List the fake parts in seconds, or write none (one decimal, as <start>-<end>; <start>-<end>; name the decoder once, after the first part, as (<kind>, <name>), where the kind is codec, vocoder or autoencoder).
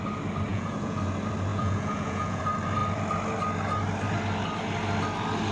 0.5-1.0 (vocoder, Vocos); 1.5-2.4